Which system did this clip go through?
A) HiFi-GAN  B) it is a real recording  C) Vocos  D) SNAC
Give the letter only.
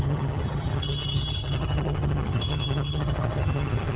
A